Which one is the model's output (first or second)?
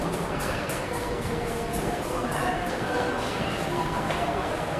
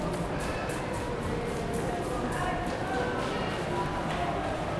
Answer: first